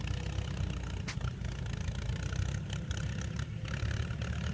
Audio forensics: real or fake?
real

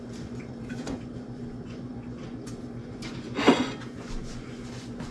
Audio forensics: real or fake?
fake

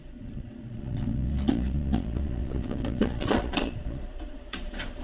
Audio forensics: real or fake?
fake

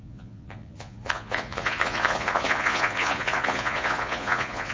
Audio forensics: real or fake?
fake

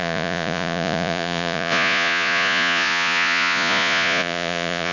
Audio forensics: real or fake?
fake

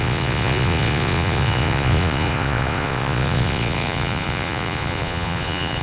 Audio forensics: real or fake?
fake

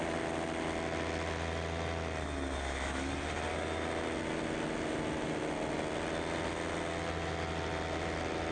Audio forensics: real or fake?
real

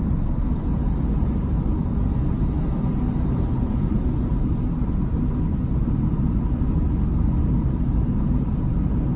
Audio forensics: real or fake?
real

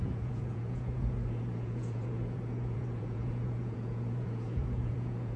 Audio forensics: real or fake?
fake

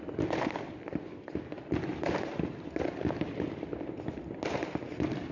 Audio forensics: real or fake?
real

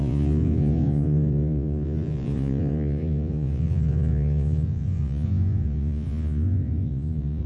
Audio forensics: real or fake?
fake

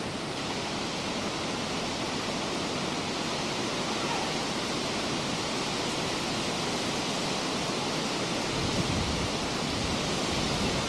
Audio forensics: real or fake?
real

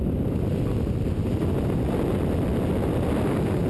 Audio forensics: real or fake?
real